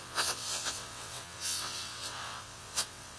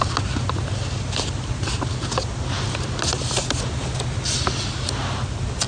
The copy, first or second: first